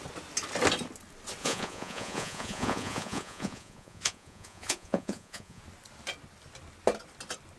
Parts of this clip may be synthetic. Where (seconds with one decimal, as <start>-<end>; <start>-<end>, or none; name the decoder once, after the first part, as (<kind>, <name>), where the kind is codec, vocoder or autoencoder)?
1.4-5.6 (vocoder, Vocos)

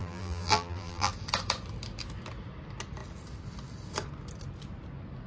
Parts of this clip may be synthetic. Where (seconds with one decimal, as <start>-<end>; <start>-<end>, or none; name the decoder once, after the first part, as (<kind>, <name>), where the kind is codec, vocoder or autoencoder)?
0.0-1.1 (vocoder, BigVGAN v2)

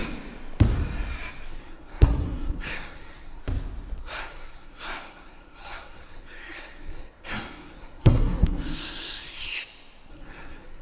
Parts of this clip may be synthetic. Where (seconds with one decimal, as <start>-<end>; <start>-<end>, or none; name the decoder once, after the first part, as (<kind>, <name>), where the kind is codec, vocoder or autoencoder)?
1.5-3.4 (codec, SNAC); 4.0-9.6; 10.1-10.8

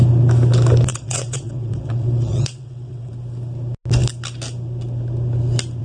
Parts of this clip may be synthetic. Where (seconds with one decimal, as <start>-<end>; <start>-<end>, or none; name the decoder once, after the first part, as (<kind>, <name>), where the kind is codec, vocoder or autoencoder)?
0.9-3.1 (vocoder, WaveNeXt)

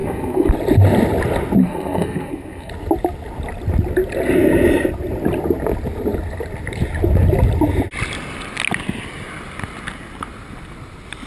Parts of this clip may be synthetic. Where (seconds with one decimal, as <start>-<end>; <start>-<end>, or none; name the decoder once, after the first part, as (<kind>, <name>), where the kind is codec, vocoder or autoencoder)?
0.0-0.5 (codec, SNAC); 1.6-2.7

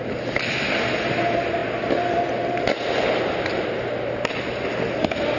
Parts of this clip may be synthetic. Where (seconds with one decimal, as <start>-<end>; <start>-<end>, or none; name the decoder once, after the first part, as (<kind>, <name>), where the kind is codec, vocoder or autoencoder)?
none

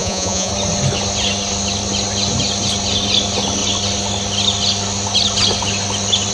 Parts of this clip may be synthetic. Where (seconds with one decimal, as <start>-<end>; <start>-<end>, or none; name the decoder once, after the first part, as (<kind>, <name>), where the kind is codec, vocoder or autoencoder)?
0.0-0.5 (vocoder, Vocos)